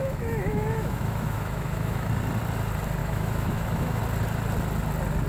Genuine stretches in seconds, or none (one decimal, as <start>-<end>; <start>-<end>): 2.1-3.0; 4.0-5.3

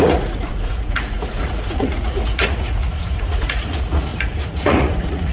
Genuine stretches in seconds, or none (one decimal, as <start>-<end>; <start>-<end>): none

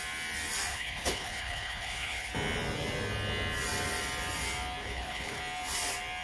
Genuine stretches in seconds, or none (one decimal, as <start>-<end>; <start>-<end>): 0.0-0.7; 2.3-4.8; 5.4-6.2

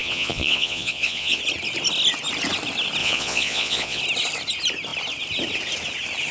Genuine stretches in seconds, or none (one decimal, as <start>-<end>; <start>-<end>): 1.4-3.0; 4.0-6.3

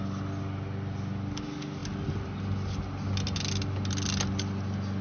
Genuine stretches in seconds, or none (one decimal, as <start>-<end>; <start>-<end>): 0.0-5.0

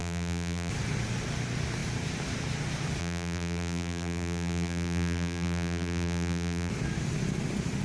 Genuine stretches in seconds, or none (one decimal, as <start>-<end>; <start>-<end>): 0.7-3.0; 6.7-7.8